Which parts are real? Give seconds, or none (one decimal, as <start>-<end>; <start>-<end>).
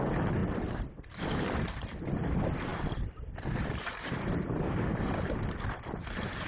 0.0-0.4; 1.2-6.5